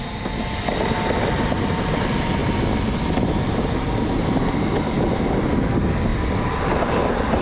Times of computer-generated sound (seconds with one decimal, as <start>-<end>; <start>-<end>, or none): none

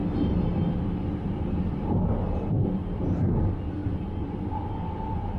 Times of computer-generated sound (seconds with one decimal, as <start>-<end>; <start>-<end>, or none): none

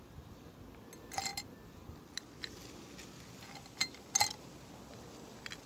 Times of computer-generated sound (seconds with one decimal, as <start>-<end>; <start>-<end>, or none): none

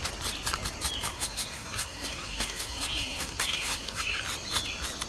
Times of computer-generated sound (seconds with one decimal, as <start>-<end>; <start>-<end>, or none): 1.1-4.2

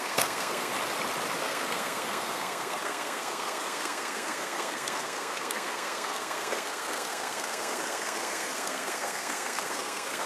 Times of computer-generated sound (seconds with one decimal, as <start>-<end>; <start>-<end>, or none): 0.0-0.7; 1.4-10.3